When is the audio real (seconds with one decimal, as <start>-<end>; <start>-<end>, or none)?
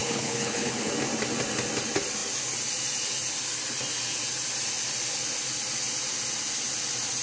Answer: 0.9-7.2